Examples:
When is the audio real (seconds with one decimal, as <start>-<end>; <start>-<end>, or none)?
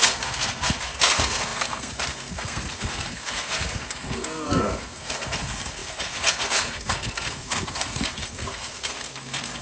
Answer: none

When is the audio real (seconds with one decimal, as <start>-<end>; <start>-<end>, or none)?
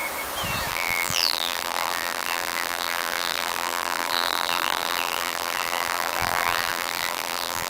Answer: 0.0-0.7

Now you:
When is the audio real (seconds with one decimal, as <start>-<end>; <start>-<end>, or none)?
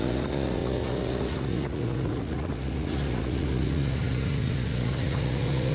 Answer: none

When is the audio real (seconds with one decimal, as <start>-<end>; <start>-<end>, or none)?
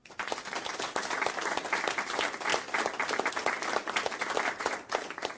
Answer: 0.0-5.4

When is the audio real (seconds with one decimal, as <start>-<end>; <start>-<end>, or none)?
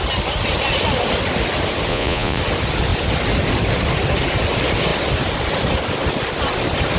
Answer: 0.0-1.9; 2.4-7.0